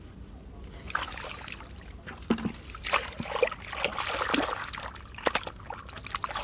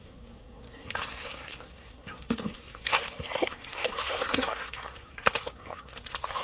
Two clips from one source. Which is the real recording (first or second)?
first